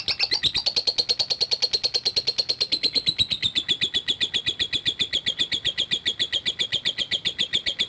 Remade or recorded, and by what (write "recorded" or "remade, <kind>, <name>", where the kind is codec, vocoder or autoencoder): recorded